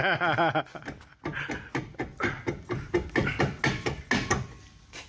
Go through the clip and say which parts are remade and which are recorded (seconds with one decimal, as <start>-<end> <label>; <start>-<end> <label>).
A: 0.0-5.1 recorded